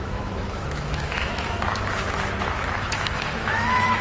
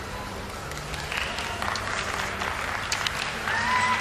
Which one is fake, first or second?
first